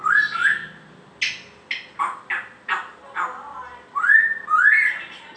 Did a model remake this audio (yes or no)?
no